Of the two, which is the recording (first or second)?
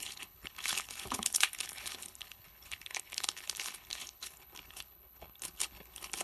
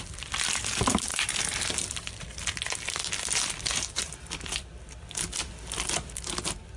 second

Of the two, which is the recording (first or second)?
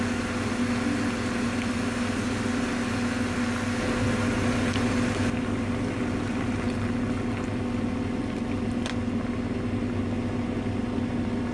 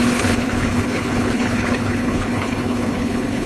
first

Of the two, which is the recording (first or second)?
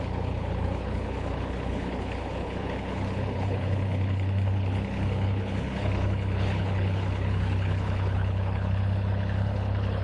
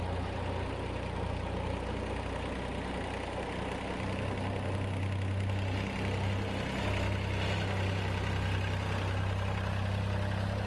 second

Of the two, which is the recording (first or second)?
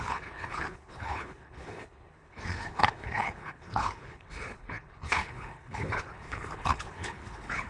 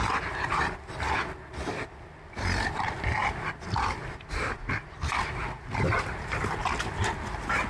second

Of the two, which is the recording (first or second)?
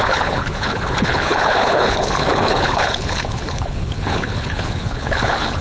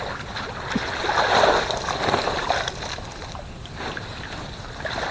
second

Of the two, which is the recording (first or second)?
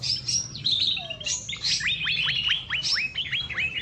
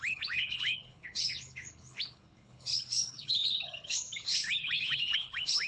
first